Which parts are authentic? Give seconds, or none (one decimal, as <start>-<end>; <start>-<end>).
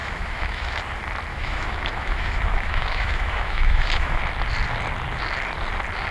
0.8-1.3; 4.2-6.1